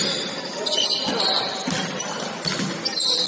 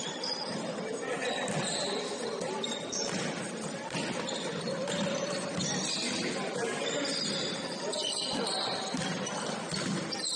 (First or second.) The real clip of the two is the first